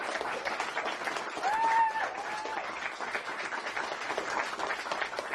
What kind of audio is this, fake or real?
real